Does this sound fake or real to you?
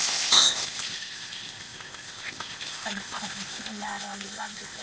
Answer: fake